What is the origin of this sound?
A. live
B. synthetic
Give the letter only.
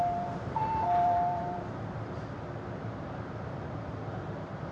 B